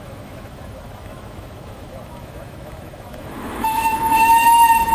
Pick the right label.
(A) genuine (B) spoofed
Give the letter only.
B